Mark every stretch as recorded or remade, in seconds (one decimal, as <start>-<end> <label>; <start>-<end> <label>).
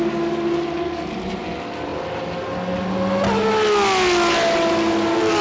0.0-5.4 recorded